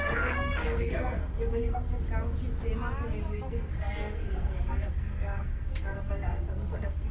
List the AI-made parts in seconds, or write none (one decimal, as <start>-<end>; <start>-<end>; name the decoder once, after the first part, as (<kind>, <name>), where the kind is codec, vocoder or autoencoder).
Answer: 0.0-2.0 (codec, SNAC); 3.3-7.1